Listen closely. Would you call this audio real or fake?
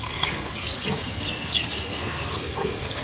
fake